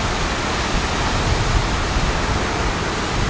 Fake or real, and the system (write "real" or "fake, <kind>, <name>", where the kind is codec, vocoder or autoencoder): real